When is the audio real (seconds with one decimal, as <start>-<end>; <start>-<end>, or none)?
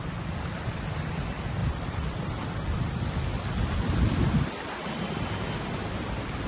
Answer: 0.0-1.6; 5.5-6.5